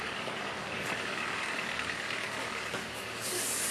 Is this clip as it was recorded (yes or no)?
no